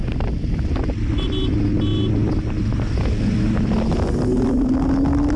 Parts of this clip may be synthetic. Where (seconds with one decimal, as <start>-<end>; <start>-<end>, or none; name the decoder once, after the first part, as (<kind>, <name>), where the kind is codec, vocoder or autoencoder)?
none